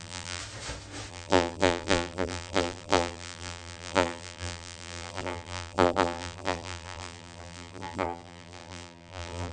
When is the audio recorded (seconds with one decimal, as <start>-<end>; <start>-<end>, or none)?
0.4-1.1